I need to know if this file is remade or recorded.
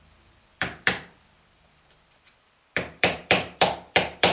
remade